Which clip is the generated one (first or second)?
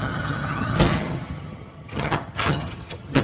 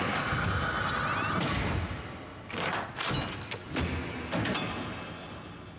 first